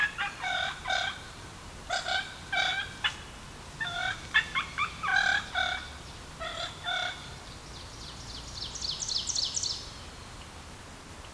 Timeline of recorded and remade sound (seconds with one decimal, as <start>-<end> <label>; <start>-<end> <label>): 0.0-2.7 remade; 2.7-3.9 recorded; 3.9-5.1 remade; 5.1-6.0 recorded; 6.0-7.6 remade; 7.6-9.8 recorded; 9.8-11.3 remade